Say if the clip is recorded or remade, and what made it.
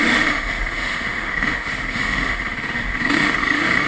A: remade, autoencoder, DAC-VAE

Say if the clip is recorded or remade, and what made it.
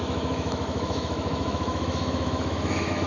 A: remade, autoencoder, DAC-VAE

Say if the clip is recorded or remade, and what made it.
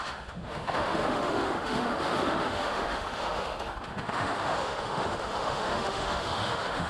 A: remade, autoencoder, DAC-VAE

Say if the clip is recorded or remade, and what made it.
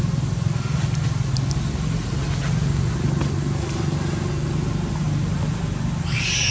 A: recorded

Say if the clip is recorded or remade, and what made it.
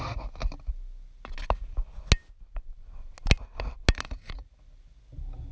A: recorded